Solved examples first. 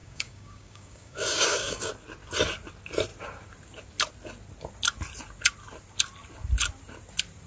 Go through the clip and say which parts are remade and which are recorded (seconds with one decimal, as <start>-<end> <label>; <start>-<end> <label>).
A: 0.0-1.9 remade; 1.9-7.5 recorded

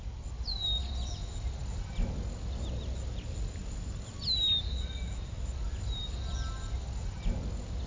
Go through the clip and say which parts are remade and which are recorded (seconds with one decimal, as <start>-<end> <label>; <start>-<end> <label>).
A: 0.0-7.9 recorded

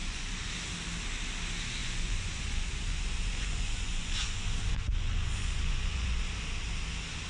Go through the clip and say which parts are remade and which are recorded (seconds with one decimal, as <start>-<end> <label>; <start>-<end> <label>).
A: 0.0-0.5 remade; 0.5-1.8 recorded; 1.8-6.2 remade; 6.2-7.3 recorded

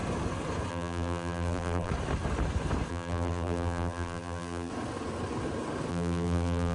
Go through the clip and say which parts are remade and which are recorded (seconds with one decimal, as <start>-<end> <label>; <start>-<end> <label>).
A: 0.0-0.7 recorded; 0.7-1.9 remade; 1.9-2.9 recorded; 2.9-4.7 remade; 4.7-5.9 recorded; 5.9-6.7 remade

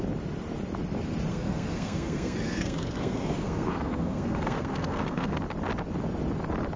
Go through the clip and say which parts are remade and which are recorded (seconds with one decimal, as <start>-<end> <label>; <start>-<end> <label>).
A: 0.0-1.3 recorded; 1.3-5.4 remade; 5.4-6.8 recorded

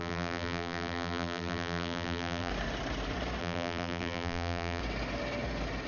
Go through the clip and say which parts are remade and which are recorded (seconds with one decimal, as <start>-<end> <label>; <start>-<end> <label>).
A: 0.0-2.5 remade; 2.5-3.4 recorded; 3.4-4.8 remade; 4.8-5.9 recorded

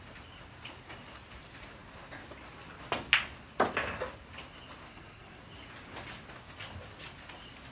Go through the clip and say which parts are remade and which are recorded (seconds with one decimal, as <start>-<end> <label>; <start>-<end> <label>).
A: 0.0-4.9 recorded; 4.9-5.4 remade; 5.4-7.7 recorded

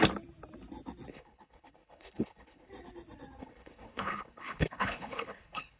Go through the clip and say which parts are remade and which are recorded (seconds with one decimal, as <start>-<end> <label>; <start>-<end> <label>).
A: 0.0-1.1 recorded; 1.1-2.7 remade; 2.7-3.4 recorded; 3.4-5.8 remade